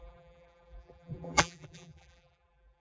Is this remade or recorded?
remade